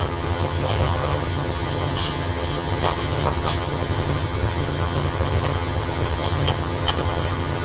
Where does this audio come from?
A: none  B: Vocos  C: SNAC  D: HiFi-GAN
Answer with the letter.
D